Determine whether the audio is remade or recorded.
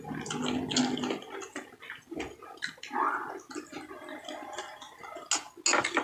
recorded